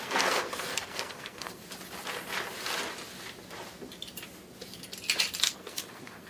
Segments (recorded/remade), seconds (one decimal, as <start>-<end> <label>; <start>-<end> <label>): 0.0-1.6 remade; 1.6-5.4 recorded; 5.4-6.3 remade